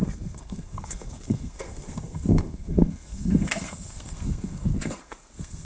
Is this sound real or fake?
fake